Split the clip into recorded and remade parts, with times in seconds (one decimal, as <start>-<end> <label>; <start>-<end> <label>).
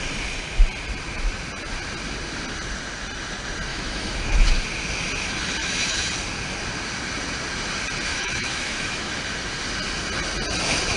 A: 0.0-3.7 recorded; 3.7-4.5 remade; 4.5-5.6 recorded; 5.6-6.1 remade; 6.1-8.1 recorded; 8.1-9.1 remade; 9.1-11.0 recorded